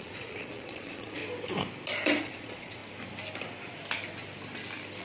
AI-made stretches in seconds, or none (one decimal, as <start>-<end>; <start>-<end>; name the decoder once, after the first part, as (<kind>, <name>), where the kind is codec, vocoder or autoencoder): 0.0-1.2 (vocoder, Vocos); 2.2-2.8